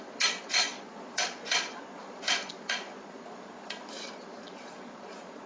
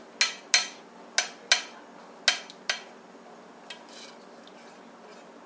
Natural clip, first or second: second